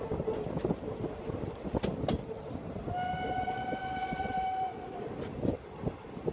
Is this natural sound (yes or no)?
yes